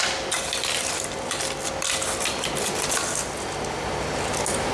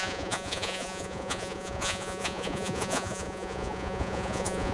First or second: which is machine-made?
second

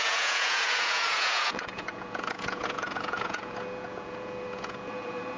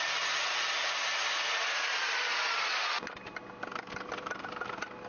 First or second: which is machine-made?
first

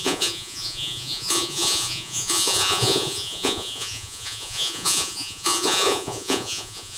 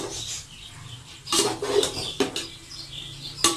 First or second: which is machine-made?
first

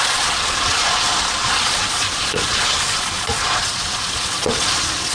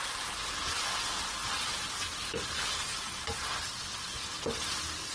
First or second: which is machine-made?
first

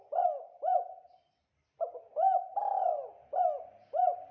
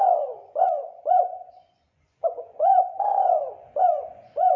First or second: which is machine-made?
second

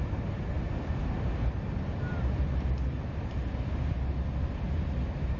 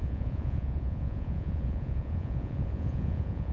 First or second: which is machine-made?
second